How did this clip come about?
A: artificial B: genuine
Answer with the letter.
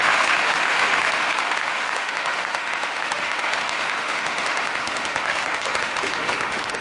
A